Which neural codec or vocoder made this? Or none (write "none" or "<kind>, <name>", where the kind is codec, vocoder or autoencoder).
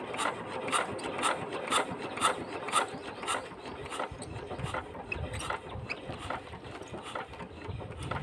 none